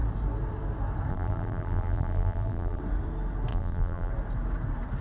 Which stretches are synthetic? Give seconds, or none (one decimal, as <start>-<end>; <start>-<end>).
1.1-2.8; 3.5-4.1